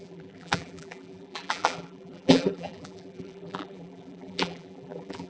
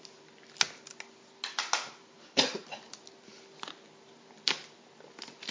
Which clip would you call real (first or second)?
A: second